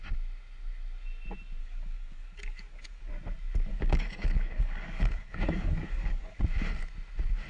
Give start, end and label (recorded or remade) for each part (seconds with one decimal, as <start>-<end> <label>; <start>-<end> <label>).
0.0-1.6 recorded; 1.6-3.1 remade; 3.1-3.7 recorded; 3.7-6.4 remade; 6.4-7.5 recorded